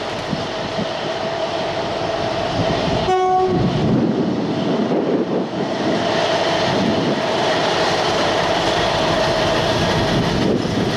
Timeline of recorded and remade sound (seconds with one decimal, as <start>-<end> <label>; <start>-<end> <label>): 0.0-0.7 recorded; 0.7-1.2 remade; 1.2-2.6 recorded; 2.6-3.8 remade; 3.8-6.9 recorded; 6.9-9.0 remade; 9.0-11.0 recorded